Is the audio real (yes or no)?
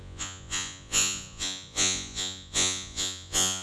no